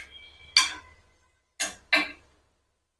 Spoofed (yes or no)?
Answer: no